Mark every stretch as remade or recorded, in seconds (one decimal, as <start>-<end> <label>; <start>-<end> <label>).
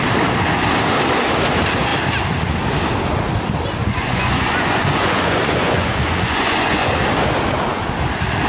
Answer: 0.0-3.8 recorded; 3.8-6.9 remade; 6.9-8.5 recorded